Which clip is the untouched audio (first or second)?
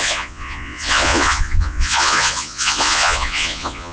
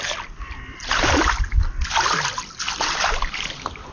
second